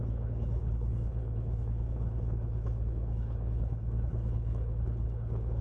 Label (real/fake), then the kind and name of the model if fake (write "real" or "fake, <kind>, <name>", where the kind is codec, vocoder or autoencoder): fake, codec, HILCodec